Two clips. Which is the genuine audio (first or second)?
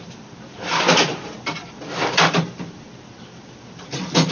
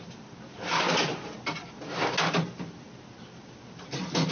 second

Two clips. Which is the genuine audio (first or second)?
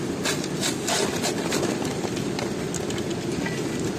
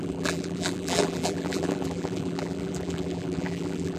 first